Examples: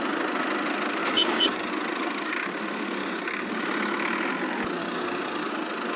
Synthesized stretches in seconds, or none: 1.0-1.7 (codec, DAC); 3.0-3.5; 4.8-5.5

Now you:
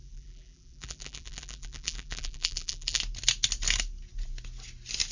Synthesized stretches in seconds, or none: 0.0-3.0 (vocoder, BigVGAN v2)

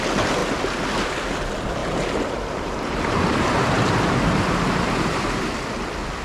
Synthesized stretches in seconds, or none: 1.8-5.5 (vocoder, BigVGAN v2)

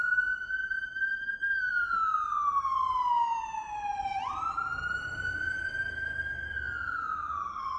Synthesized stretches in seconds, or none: 0.6-5.3 (vocoder, BigVGAN v2)

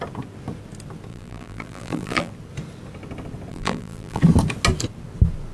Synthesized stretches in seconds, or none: 1.1-2.3 (vocoder, BigVGAN v2); 3.5-4.2

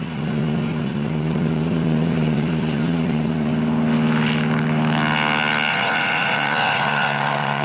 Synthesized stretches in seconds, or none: 0.0-3.5 (vocoder, Vocos); 5.7-7.6

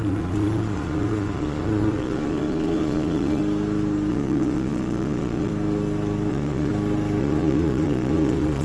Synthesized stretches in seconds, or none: 0.0-3.4 (vocoder, Vocos); 4.1-5.5; 6.3-6.7; 7.2-8.6

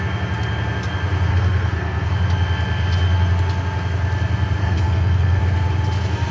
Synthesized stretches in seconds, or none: 1.3-2.1 (codec, SNAC); 4.6-5.4